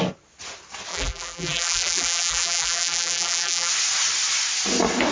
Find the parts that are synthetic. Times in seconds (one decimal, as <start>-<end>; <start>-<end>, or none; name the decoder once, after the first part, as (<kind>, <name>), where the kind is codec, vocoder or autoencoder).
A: 0.9-3.7 (vocoder, BigVGAN v2)